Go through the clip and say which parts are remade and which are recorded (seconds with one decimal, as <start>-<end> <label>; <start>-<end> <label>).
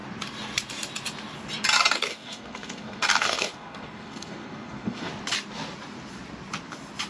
0.0-2.1 recorded; 2.1-5.1 remade; 5.1-7.1 recorded